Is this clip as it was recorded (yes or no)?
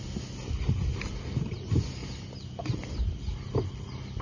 yes